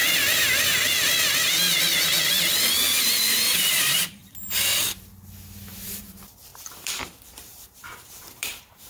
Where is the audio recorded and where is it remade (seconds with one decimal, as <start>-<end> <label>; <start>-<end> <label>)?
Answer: 0.0-3.6 recorded; 3.6-4.2 remade; 4.2-6.0 recorded; 6.0-8.9 remade